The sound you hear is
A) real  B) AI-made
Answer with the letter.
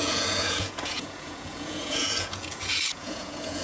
B